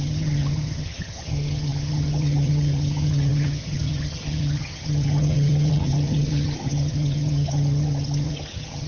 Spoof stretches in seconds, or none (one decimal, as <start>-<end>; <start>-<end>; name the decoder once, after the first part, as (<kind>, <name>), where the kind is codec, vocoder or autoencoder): 0.0-8.9 (vocoder, HiFi-GAN)